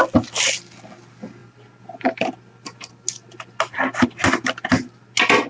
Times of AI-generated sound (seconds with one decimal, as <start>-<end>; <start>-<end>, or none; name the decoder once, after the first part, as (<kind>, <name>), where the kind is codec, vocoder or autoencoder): none